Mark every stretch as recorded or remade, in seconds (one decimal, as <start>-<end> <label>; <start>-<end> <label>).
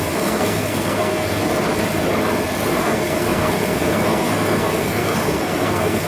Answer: 0.0-1.4 remade; 1.4-2.8 recorded; 2.8-6.1 remade